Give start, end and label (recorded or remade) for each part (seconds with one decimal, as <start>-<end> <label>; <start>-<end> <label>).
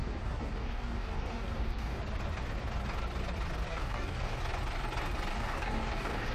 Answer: 0.0-2.0 remade; 2.0-3.7 recorded; 3.7-4.4 remade; 4.4-5.3 recorded; 5.3-6.3 remade